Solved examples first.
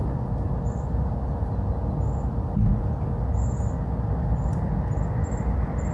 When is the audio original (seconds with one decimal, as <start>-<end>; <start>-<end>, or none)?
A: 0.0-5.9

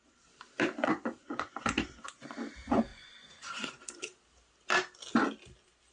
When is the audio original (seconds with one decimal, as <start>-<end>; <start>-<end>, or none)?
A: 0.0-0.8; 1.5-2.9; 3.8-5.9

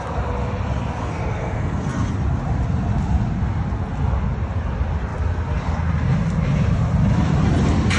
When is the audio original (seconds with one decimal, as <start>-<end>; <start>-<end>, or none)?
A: 0.0-1.0; 2.1-8.0